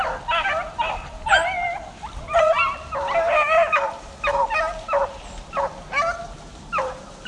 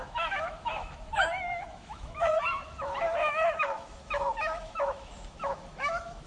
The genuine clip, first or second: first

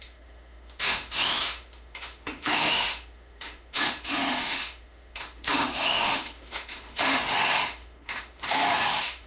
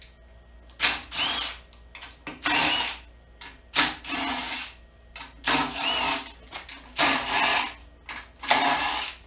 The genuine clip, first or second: second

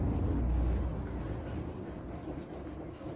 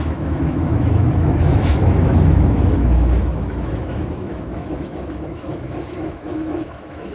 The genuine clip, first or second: first